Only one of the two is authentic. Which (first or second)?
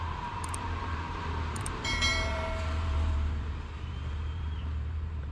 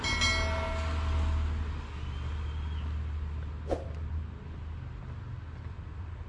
second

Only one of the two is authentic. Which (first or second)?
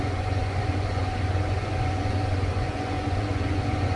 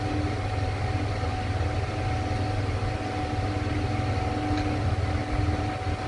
second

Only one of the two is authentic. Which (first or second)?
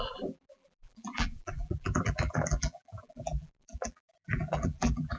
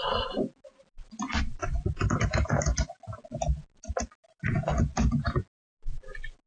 second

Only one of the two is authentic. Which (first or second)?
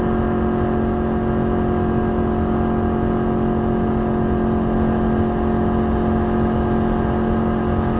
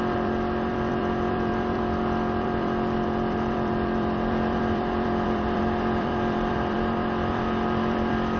first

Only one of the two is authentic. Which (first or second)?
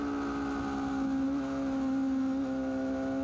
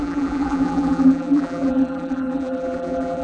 first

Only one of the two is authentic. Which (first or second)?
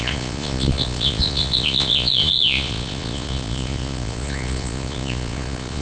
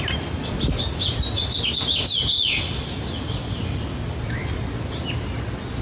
second